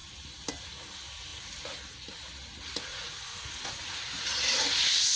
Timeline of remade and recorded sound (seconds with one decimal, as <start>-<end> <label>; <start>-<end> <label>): 0.0-2.9 recorded; 2.9-4.4 remade; 4.4-5.2 recorded